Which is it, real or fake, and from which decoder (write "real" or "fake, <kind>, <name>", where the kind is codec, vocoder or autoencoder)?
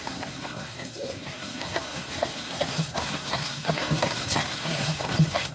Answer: fake, codec, SNAC